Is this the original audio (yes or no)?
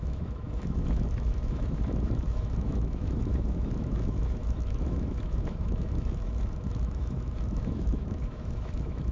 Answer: no